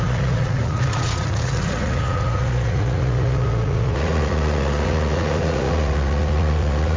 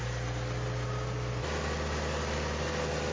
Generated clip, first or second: first